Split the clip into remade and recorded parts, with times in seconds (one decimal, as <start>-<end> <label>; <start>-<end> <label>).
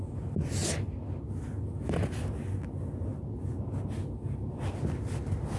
0.0-5.6 recorded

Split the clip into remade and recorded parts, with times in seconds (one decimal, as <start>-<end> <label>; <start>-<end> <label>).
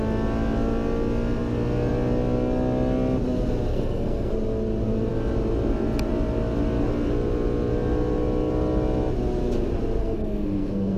0.0-3.7 recorded; 3.7-4.3 remade; 4.3-10.0 recorded; 10.0-11.0 remade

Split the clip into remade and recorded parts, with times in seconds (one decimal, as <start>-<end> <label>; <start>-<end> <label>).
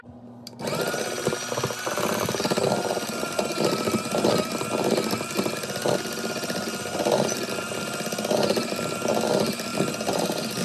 0.0-10.6 recorded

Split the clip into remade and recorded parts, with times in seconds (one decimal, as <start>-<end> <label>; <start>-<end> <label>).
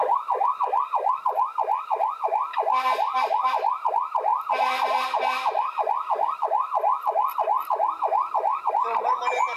0.0-9.6 recorded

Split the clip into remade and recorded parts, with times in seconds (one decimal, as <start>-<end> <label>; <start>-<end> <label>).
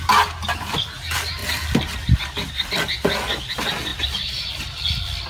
0.0-5.3 recorded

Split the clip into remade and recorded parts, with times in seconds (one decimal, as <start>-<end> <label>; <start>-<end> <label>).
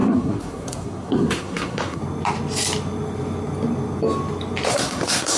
0.0-2.0 remade; 2.0-4.7 recorded; 4.7-5.4 remade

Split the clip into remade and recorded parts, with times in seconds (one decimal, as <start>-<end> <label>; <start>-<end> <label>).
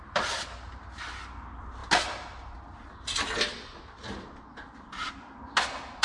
0.0-6.0 recorded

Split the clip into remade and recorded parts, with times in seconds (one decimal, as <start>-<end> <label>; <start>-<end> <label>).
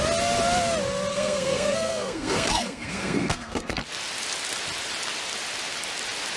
0.0-1.1 recorded; 1.1-3.8 remade; 3.8-6.4 recorded